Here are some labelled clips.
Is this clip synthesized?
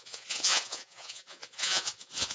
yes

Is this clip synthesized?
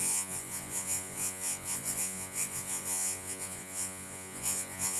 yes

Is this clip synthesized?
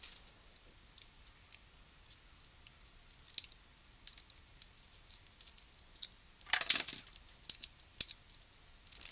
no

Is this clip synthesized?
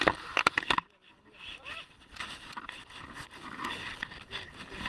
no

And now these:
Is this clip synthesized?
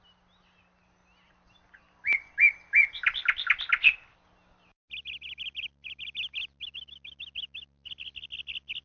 no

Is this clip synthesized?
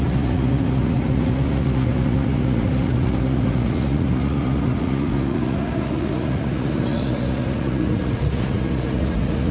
yes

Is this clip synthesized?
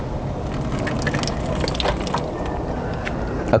no